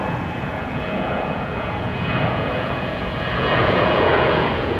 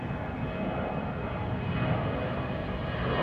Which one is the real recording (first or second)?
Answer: second